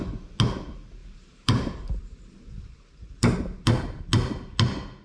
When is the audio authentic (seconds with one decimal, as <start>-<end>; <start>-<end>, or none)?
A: 0.0-1.0; 4.0-5.0